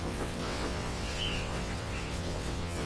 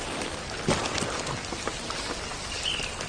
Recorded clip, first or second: second